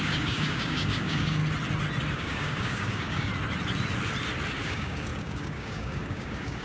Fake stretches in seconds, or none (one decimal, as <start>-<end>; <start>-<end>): 0.0-1.4; 2.1-3.3; 4.6-6.6

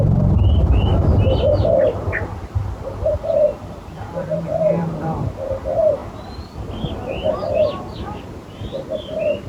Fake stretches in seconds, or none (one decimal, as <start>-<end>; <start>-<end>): 0.0-6.0

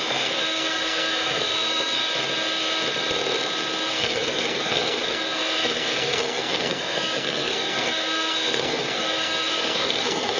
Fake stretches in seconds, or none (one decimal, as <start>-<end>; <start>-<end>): 0.0-2.0; 3.8-10.4